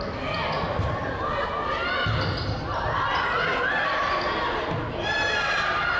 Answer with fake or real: real